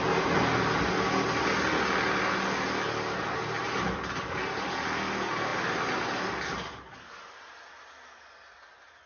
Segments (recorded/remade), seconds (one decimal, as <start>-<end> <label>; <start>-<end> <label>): 0.0-9.1 recorded